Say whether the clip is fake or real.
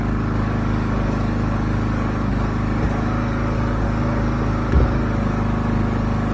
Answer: fake